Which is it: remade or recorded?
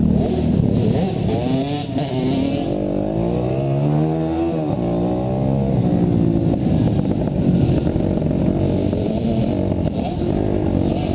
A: recorded